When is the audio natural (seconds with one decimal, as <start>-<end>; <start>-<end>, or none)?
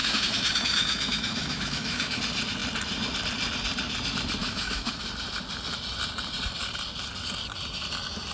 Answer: 2.2-4.4; 4.9-8.3